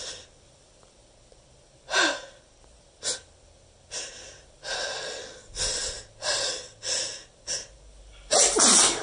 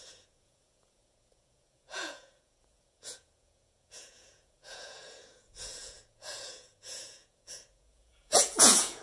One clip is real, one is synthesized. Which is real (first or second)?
first